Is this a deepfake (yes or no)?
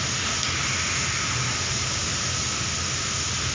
no